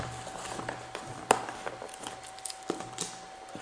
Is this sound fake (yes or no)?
no